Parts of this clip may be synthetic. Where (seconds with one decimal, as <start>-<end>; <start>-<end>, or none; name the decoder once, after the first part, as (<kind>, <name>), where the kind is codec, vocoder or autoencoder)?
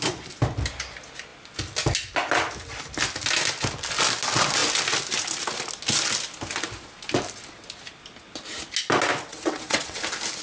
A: 9.3-10.0 (vocoder, WaveNeXt)